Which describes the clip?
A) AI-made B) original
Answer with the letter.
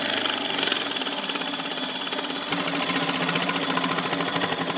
B